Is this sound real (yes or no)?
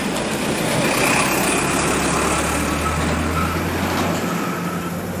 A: yes